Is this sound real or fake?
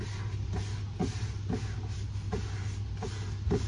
real